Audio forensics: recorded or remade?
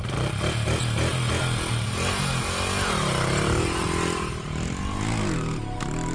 recorded